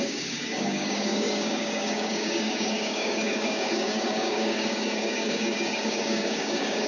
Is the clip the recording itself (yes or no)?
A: no